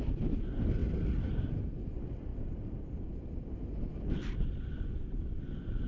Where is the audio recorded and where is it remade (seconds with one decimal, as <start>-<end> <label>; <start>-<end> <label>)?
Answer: 0.0-5.9 recorded